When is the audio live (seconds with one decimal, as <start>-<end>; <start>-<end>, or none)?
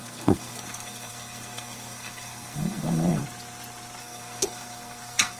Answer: 3.2-4.0